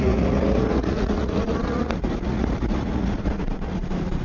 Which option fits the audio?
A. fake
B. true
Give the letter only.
A